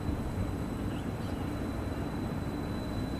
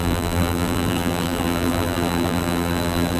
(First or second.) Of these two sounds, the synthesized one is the second